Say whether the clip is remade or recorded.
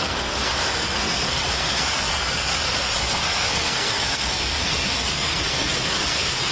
remade